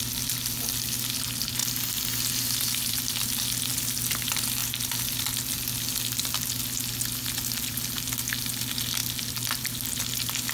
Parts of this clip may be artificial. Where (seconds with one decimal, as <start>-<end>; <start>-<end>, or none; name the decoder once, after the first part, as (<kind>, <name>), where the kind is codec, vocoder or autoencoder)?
none